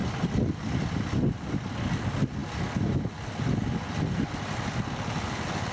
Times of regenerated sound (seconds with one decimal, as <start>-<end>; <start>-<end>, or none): none